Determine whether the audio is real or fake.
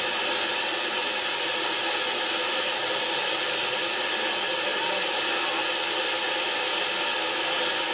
real